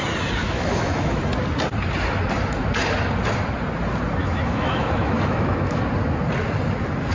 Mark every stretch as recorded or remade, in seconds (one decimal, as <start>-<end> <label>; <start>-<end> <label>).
0.0-0.4 recorded; 0.4-1.2 remade; 1.2-4.2 recorded; 4.2-5.8 remade; 5.8-7.1 recorded